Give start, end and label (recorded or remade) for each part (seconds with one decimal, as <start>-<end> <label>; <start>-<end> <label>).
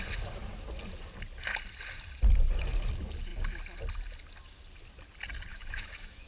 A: 0.0-5.5 recorded; 5.5-6.3 remade